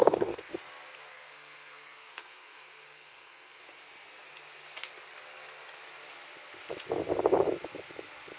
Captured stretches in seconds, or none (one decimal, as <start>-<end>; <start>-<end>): 0.5-1.1; 3.6-8.4